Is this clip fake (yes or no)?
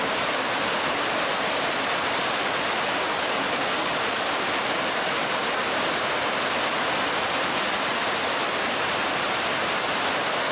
no